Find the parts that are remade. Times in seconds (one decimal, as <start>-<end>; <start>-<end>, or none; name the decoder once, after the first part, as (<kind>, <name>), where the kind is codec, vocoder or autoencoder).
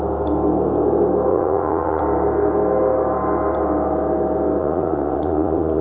1.3-2.0 (vocoder, Vocos); 4.6-5.8